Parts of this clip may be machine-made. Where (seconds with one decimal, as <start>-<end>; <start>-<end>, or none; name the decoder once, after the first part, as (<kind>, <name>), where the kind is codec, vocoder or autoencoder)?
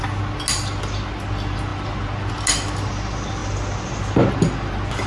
none